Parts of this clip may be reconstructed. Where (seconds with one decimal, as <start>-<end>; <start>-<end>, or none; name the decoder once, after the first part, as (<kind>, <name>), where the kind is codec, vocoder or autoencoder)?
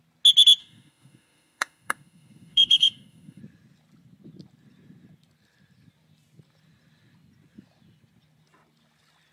0.6-3.4 (autoencoder, DAC-VAE)